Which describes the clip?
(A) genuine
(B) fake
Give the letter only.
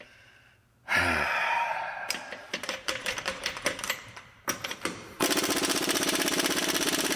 B